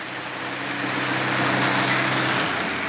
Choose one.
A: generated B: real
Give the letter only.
B